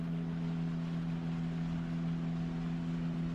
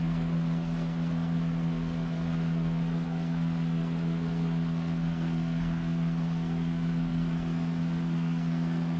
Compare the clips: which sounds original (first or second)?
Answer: first